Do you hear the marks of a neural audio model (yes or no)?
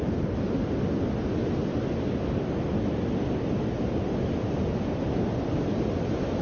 no